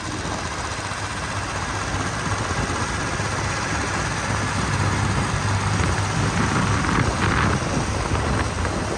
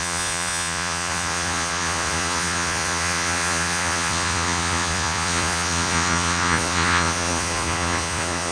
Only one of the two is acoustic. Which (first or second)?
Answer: first